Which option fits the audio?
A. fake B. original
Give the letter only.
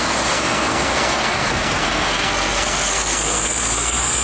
A